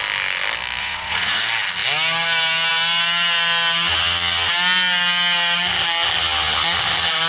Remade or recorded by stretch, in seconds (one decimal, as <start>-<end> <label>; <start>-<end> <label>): 0.0-0.8 recorded; 0.8-1.4 remade; 1.4-7.3 recorded